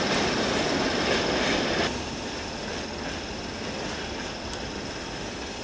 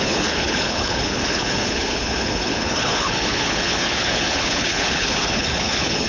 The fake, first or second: second